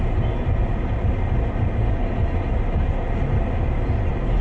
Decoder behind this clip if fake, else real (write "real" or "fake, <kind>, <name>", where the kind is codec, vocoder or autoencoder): real